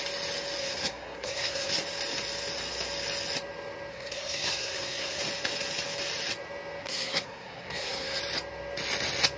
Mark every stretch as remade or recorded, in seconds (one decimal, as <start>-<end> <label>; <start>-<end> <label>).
0.0-0.6 recorded; 0.6-1.7 remade; 1.7-3.9 recorded; 3.9-5.2 remade; 5.2-6.8 recorded; 6.8-8.2 remade; 8.2-9.4 recorded